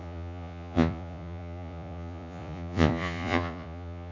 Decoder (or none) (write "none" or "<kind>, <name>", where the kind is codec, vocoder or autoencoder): vocoder, Vocos